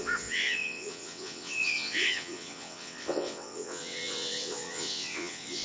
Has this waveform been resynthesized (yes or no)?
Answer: yes